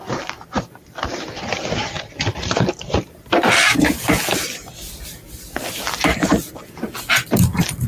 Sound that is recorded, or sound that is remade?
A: remade